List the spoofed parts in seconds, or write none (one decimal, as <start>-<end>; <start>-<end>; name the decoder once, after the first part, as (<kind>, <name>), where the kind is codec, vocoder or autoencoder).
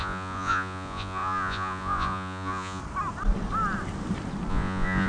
0.0-2.8 (vocoder, Vocos); 4.5-5.1